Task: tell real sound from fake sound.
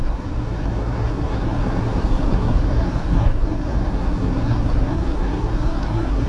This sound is fake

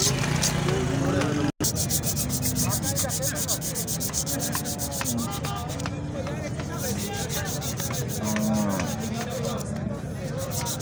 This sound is real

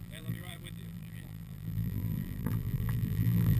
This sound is fake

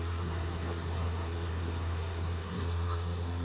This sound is fake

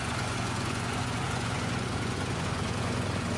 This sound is fake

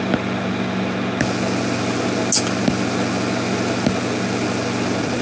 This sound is real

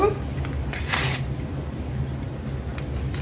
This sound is real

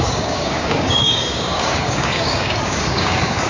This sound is fake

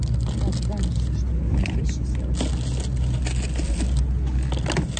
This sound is real